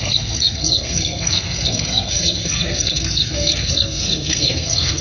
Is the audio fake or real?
fake